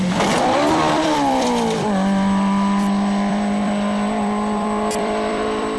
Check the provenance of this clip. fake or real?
fake